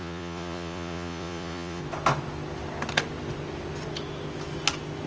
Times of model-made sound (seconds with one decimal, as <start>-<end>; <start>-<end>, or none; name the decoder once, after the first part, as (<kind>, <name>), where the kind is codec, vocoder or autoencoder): 0.0-1.8 (vocoder, Vocos)